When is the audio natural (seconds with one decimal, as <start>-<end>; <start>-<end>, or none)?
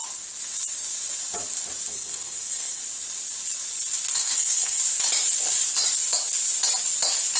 0.0-1.9; 2.8-4.2; 4.8-7.4